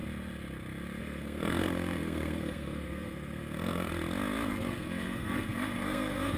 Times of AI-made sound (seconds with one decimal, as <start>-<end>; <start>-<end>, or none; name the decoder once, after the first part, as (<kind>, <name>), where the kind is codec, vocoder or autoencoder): 1.0-3.9 (codec, SNAC); 4.5-6.4